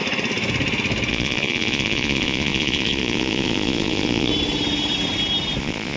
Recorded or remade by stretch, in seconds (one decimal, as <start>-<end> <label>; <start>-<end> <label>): 0.0-1.1 recorded; 1.1-4.3 remade; 4.3-5.6 recorded; 5.6-6.0 remade